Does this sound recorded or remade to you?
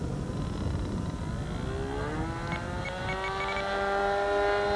recorded